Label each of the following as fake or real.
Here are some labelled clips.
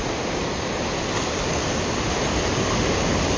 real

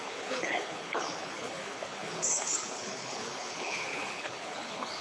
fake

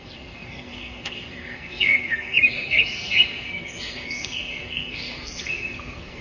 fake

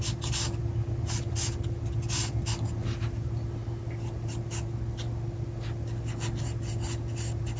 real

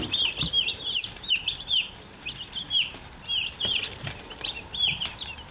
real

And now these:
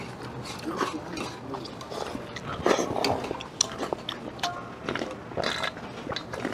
real